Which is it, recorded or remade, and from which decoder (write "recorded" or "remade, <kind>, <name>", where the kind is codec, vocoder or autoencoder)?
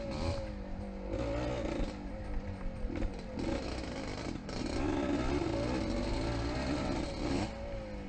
recorded